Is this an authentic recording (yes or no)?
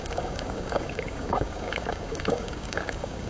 no